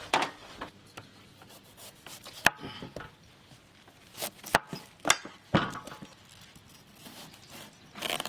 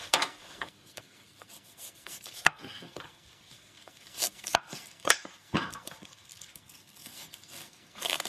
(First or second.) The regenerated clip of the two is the second